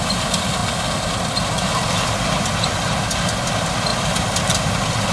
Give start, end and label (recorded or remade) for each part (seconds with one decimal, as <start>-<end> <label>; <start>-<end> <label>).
0.0-5.1 recorded